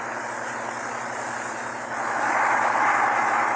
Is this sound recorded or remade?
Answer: recorded